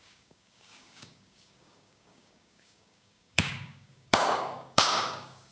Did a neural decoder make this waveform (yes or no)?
yes